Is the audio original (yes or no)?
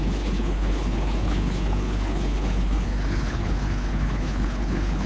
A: no